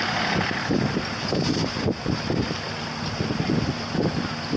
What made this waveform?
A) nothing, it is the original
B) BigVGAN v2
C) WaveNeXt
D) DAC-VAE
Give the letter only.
B